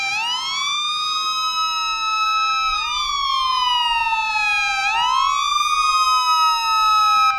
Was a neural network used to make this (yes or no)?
no